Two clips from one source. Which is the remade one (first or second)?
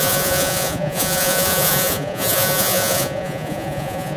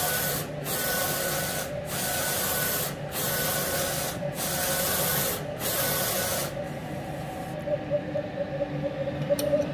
first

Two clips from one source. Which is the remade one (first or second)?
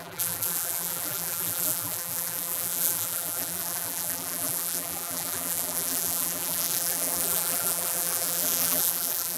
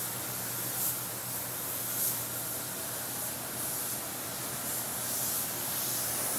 first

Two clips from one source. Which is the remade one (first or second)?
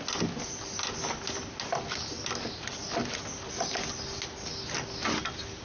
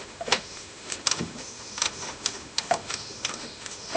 second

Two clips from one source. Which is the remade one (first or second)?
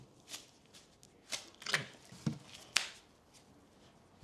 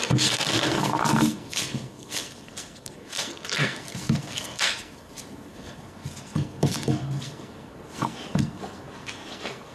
second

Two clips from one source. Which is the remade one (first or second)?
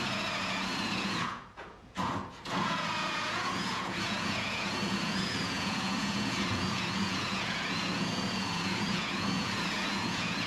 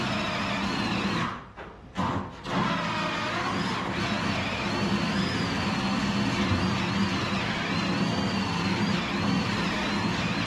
first